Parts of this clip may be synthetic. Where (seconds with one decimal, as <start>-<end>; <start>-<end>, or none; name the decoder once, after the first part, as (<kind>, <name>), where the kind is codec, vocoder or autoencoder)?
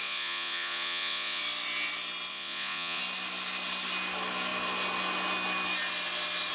0.0-1.4 (vocoder, Vocos); 2.3-3.0